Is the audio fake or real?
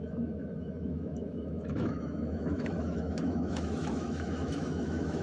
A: fake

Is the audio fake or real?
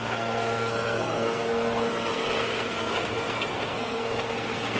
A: fake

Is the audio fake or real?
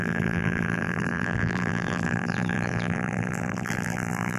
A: fake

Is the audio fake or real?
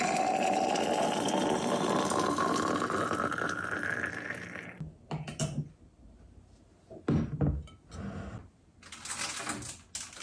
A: real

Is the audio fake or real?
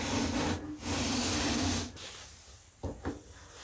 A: real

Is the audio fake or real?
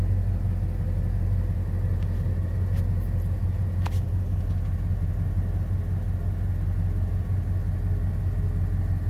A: real